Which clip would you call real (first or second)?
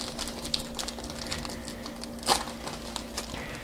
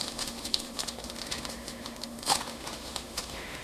first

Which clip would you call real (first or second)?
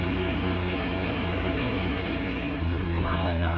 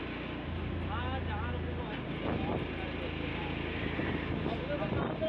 second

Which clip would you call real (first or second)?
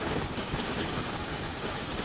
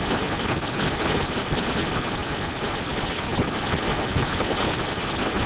second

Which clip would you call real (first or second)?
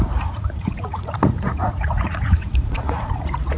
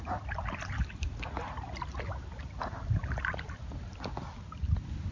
second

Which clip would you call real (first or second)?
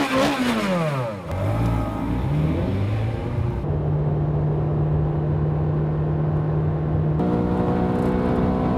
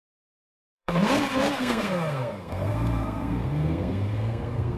first